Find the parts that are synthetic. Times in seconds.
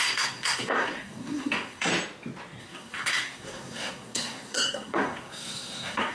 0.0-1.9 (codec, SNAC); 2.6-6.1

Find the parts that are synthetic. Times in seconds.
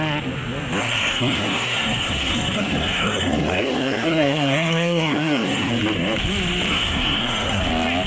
0.8-5.7 (codec, SNAC); 6.7-7.6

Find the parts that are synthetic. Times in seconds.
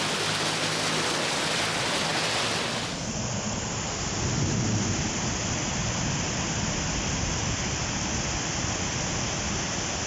none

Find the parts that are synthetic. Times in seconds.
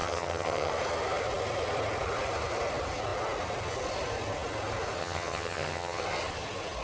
0.0-0.7 (vocoder, HiFi-GAN); 5.0-6.0